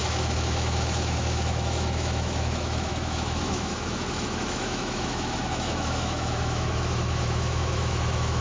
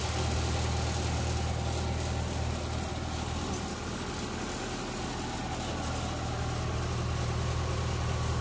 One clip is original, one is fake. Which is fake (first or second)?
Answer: first